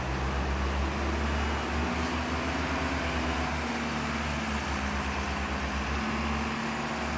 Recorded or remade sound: recorded